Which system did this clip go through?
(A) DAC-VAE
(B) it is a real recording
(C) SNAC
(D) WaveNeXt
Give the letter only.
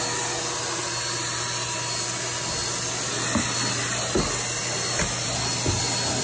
B